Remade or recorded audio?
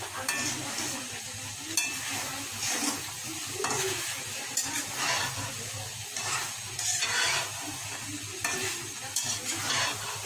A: recorded